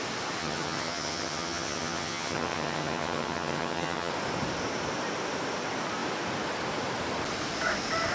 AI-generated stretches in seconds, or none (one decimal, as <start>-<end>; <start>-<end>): 0.4-4.1